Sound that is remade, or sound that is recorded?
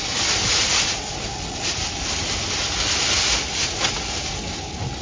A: recorded